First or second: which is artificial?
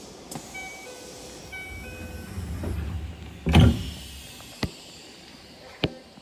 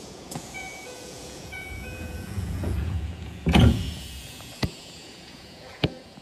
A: second